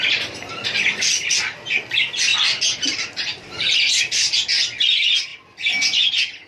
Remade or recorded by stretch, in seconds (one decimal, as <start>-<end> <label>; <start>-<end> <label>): 0.0-6.5 recorded